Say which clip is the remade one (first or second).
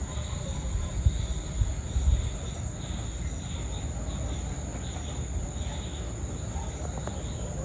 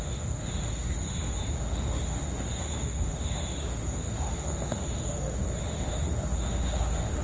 second